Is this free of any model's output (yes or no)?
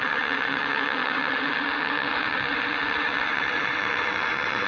no